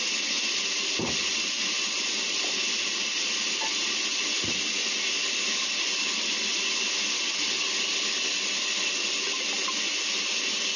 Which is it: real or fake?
real